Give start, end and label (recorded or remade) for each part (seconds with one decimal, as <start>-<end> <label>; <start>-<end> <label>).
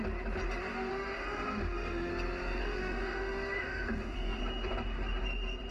0.0-0.9 recorded; 0.9-2.1 remade; 2.1-2.6 recorded; 2.6-4.4 remade; 4.4-5.7 recorded